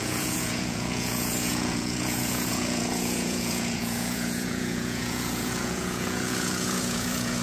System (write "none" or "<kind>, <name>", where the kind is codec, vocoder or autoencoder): vocoder, Vocos